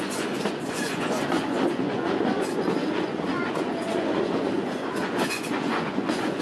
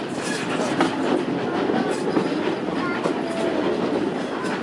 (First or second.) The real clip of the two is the second